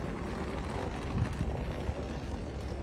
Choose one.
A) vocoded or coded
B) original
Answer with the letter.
B